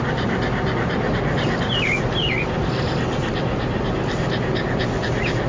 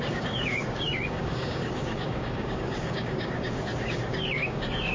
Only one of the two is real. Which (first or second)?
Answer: first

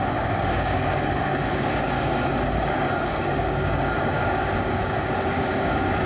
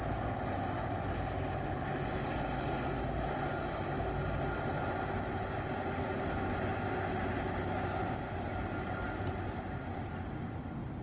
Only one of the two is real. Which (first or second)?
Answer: second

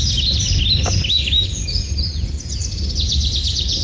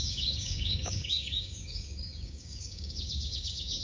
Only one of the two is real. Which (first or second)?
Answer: first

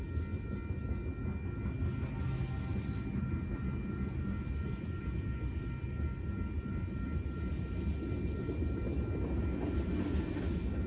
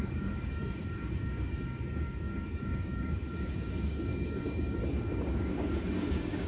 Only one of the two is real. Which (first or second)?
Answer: first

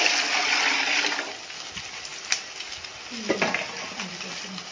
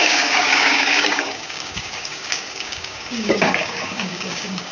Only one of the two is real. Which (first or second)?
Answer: first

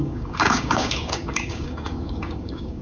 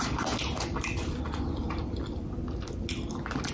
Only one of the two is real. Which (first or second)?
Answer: second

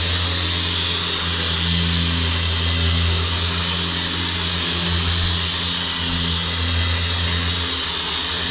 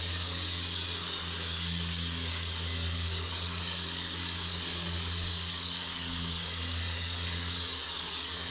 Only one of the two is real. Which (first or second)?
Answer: first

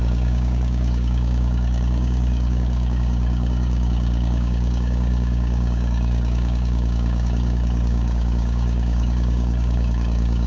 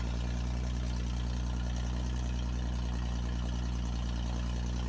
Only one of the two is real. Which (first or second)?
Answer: second